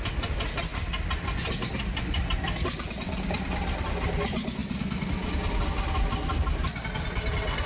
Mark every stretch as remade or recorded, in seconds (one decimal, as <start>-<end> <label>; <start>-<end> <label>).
0.0-7.7 recorded